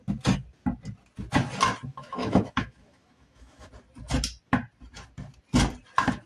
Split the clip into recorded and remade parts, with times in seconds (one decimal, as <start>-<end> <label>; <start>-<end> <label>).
0.0-1.9 recorded; 1.9-3.7 remade; 3.7-6.3 recorded